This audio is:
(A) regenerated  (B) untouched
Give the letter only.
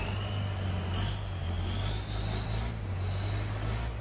B